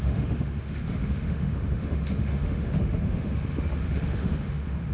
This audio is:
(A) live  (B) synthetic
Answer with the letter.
B